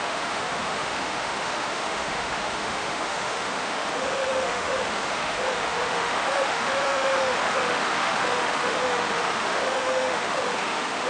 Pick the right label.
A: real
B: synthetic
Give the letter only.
B